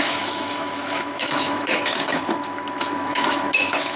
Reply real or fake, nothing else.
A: fake